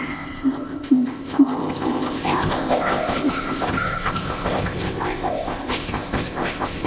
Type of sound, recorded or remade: remade